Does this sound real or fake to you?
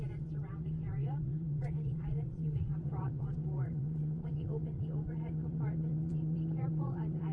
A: fake